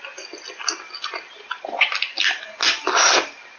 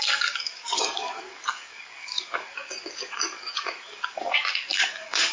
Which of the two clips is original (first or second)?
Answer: first